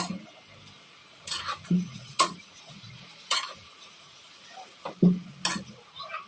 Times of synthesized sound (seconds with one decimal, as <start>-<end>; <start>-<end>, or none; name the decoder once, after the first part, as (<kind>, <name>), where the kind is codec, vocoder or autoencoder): 1.0-4.8 (vocoder, Vocos)